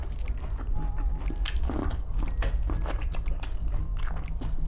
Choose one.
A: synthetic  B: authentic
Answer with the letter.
B